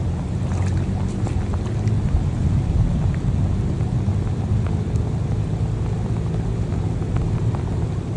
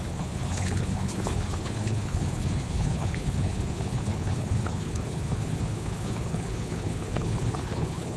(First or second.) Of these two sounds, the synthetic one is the second